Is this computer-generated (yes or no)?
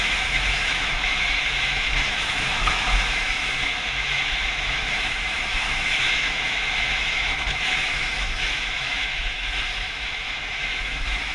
yes